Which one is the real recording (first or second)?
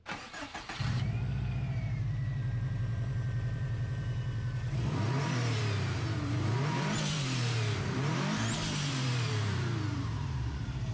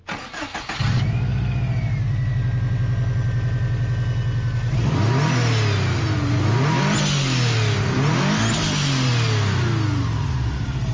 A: second